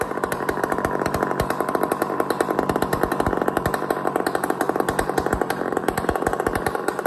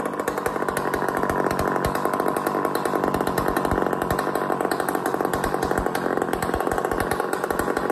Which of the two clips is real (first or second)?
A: second